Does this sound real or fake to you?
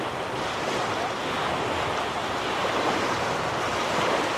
real